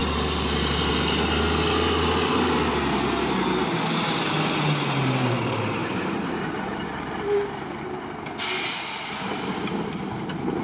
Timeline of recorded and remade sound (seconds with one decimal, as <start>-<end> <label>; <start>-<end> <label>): 0.0-0.9 remade; 0.9-3.6 recorded; 3.6-4.1 remade; 4.1-5.8 recorded; 5.8-7.8 remade; 7.8-10.6 recorded